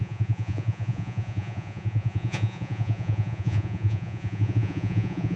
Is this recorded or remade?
remade